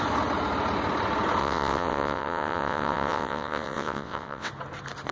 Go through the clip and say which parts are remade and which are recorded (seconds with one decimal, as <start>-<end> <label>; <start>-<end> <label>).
0.0-1.4 recorded; 1.4-4.5 remade; 4.5-5.1 recorded